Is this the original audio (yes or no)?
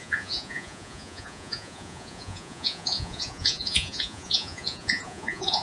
no